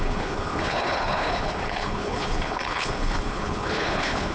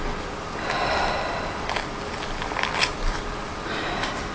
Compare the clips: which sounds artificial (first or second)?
first